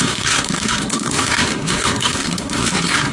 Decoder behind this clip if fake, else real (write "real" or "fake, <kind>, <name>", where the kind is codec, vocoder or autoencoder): fake, codec, SNAC